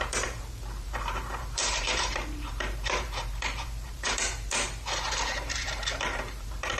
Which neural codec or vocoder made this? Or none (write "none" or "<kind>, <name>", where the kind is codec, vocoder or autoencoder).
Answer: vocoder, BigVGAN v2